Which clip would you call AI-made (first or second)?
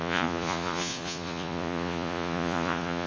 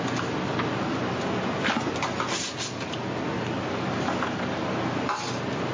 first